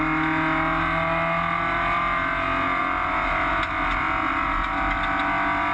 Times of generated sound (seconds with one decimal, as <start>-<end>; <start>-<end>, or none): none